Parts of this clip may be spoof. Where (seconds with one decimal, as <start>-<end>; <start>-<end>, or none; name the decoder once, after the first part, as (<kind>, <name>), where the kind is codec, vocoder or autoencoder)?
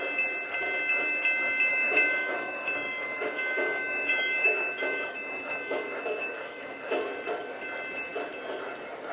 1.7-6.9 (autoencoder, DAC-VAE)